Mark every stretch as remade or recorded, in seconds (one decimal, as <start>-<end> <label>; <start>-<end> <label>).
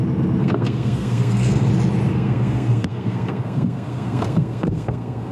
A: 0.0-0.4 recorded; 0.4-1.7 remade; 1.7-2.1 recorded; 2.1-5.3 remade